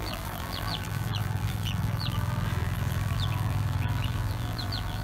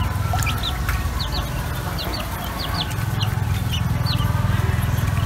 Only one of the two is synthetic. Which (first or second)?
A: first